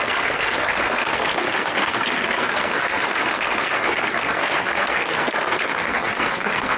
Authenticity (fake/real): fake